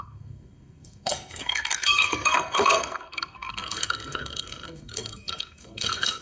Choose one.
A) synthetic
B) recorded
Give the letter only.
A